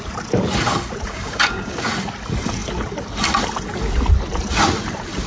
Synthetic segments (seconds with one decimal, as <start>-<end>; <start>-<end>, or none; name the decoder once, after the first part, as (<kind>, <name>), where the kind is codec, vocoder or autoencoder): 1.1-1.9 (codec, DAC)